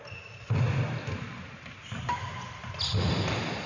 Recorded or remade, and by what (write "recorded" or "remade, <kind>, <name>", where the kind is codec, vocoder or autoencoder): recorded